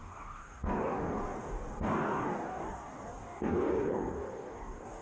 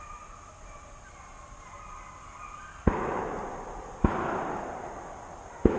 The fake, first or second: first